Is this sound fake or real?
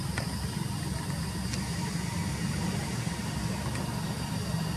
real